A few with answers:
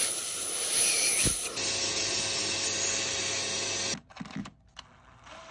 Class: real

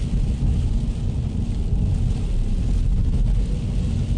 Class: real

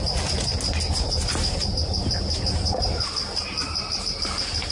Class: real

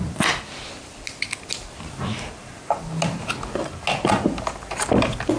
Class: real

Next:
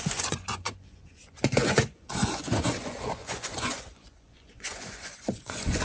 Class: fake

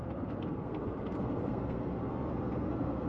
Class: fake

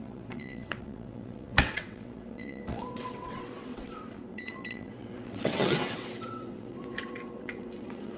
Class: fake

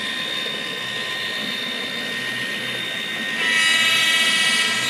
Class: real